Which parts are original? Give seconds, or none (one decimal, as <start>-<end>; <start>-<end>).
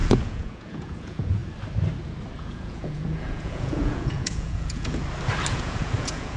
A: 1.4-2.4; 5.0-5.5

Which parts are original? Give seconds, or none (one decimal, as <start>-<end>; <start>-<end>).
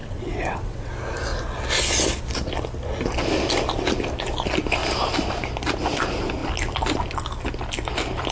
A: 0.9-8.3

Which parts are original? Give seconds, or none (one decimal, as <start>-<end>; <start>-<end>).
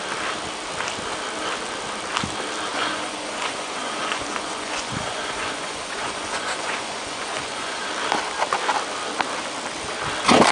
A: 0.0-2.7; 7.9-10.5